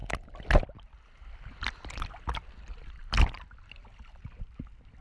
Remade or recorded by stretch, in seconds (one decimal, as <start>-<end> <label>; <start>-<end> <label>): 0.0-5.0 recorded